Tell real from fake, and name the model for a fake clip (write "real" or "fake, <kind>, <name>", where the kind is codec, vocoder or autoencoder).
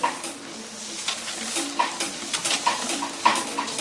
real